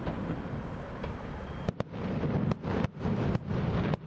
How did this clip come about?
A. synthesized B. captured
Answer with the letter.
B